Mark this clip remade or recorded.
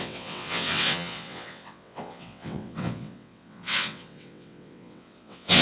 remade